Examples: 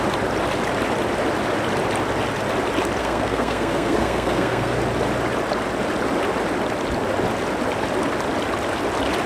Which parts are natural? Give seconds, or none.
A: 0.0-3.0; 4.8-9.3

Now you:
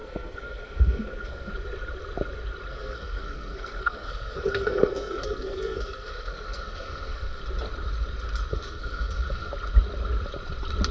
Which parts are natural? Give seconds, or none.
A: 1.5-2.7; 7.4-8.5; 9.5-10.9

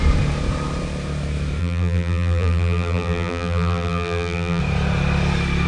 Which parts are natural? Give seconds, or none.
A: 0.0-1.6; 4.6-5.7

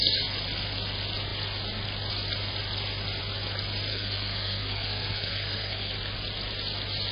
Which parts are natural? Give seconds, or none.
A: 0.0-3.9; 5.9-7.1

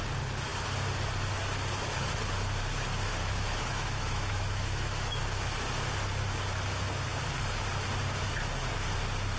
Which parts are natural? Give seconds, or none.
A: 0.0-3.1; 5.2-9.4